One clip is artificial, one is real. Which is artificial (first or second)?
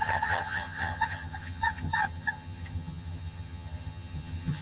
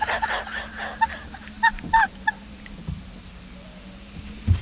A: first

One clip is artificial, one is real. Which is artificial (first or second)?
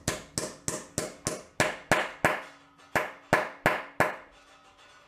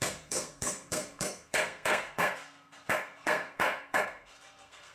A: second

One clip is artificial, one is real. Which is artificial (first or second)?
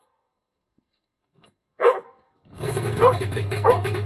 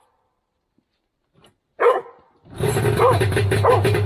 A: first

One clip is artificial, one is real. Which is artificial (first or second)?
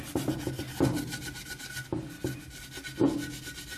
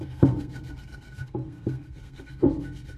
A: second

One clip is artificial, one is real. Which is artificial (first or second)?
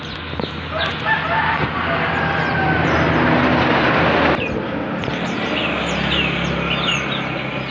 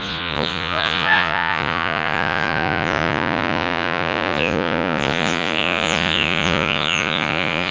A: second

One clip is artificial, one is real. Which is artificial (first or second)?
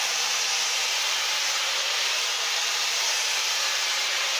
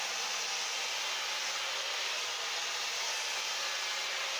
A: first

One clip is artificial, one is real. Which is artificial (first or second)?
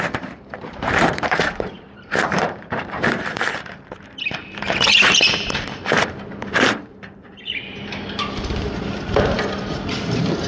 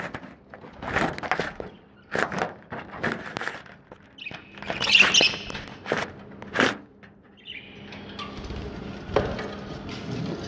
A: first